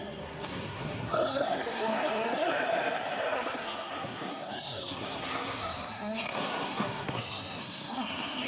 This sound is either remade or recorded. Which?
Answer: remade